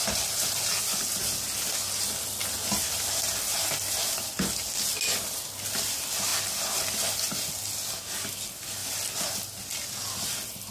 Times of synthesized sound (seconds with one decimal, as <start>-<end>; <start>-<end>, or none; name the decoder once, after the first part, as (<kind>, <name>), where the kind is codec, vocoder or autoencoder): none